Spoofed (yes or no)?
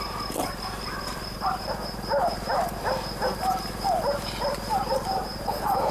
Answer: no